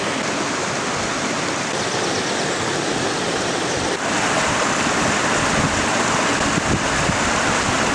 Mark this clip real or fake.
real